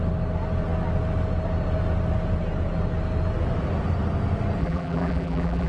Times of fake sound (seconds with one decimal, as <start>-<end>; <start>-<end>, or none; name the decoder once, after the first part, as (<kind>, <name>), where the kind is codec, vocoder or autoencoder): 4.6-5.7 (vocoder, BigVGAN v2)